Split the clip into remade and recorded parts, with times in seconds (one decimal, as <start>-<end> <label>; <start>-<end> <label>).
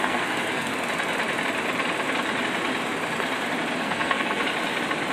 0.0-0.7 remade; 0.7-3.8 recorded; 3.8-4.4 remade; 4.4-5.1 recorded